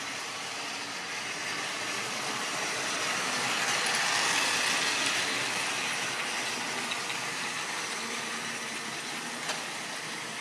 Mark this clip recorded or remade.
recorded